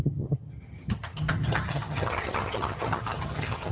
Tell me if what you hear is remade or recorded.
remade